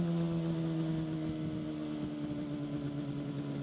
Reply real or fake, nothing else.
real